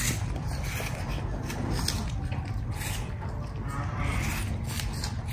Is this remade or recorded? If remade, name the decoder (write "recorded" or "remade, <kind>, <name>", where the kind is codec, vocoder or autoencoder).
recorded